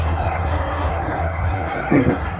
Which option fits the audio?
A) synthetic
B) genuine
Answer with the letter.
A